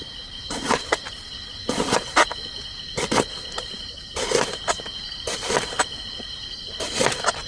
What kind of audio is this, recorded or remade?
recorded